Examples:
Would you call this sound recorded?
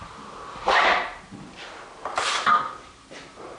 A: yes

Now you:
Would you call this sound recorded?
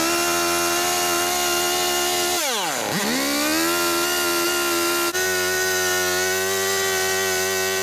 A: yes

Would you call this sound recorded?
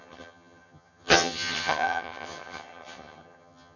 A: no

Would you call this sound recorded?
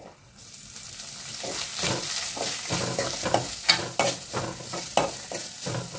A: yes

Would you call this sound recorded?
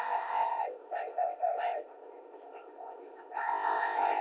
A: no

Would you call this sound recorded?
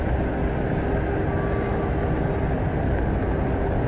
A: yes